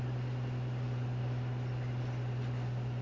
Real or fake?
real